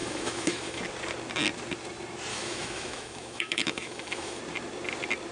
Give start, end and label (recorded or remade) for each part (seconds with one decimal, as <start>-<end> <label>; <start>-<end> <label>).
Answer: 0.0-0.8 remade; 0.8-2.3 recorded; 2.3-4.4 remade; 4.4-5.3 recorded